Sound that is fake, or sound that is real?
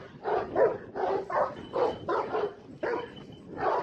real